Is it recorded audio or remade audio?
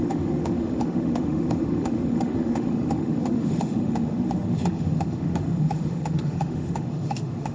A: remade